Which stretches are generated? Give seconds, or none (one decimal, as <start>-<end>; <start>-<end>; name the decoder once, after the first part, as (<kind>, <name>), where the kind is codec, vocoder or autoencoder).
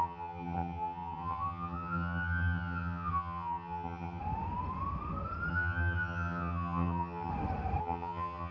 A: 0.0-4.2 (vocoder, HiFi-GAN); 5.5-7.3; 7.8-8.5